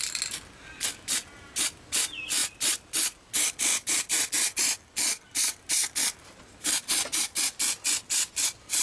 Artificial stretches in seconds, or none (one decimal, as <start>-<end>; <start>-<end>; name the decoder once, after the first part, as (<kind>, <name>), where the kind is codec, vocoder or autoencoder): none